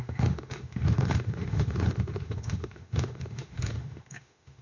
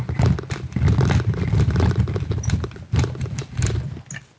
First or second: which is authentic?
second